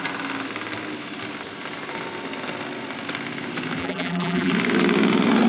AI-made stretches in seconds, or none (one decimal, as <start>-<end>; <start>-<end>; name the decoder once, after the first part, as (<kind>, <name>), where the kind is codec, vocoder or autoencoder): 3.8-4.5 (vocoder, BigVGAN v2)